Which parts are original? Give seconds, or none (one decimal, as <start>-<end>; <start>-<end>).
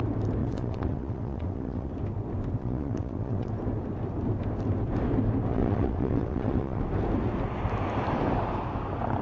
0.0-0.4; 1.9-2.6; 3.5-5.5; 6.8-9.2